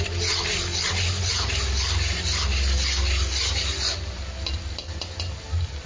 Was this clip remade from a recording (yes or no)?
no